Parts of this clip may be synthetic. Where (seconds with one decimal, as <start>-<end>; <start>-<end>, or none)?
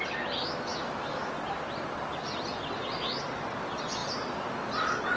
0.7-1.3